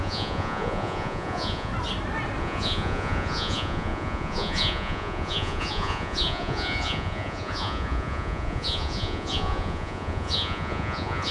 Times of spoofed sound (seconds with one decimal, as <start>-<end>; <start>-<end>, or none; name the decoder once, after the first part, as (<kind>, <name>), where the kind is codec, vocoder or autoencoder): 0.0-1.7 (vocoder, Vocos); 2.4-11.3